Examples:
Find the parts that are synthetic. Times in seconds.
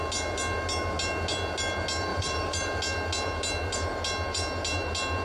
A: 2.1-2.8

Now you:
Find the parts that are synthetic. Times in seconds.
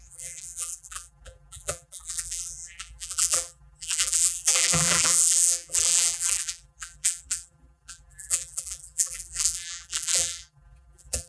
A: 0.0-11.3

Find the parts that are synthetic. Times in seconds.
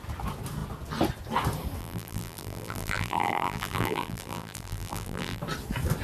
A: 1.8-5.4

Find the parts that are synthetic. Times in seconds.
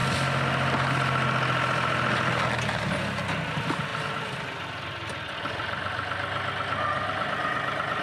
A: 3.9-5.3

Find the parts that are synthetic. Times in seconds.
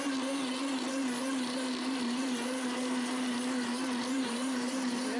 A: 4.2-5.2